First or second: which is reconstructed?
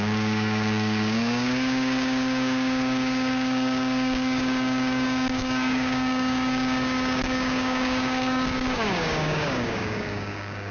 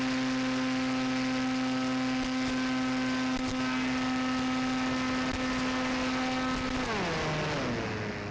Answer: first